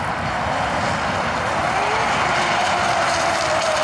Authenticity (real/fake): real